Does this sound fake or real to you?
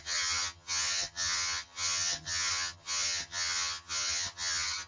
fake